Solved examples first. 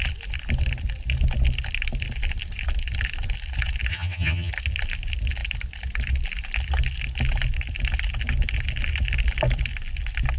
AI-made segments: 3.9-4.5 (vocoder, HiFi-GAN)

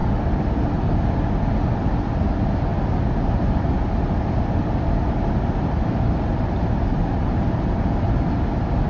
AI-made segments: none

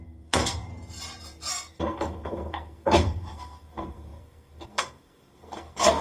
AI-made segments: 0.0-0.7 (codec, SNAC); 1.5-6.0

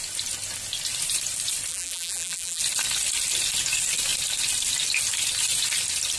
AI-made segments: 1.7-2.6 (vocoder, BigVGAN v2)

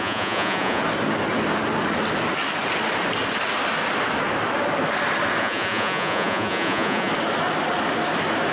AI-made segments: 0.0-0.8 (vocoder, Vocos); 5.4-7.1